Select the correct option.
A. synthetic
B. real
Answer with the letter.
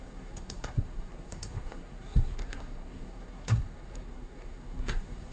A